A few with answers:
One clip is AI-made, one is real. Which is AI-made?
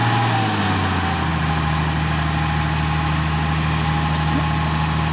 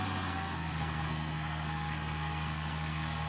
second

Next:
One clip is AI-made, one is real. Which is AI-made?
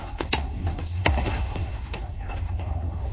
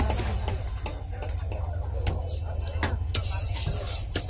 first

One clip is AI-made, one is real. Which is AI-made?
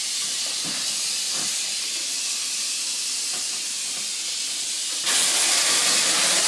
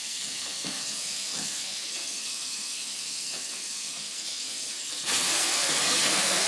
second